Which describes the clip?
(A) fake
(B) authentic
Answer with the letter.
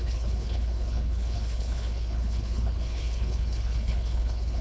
A